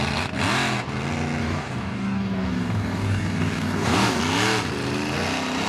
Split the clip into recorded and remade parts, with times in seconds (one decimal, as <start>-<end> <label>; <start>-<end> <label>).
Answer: 0.0-1.4 recorded; 1.4-4.2 remade; 4.2-5.7 recorded